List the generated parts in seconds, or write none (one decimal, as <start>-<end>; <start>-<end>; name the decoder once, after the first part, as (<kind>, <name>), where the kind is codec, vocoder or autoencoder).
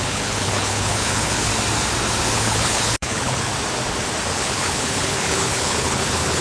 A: 0.0-1.5 (codec, HILCodec); 2.3-3.5; 4.3-6.4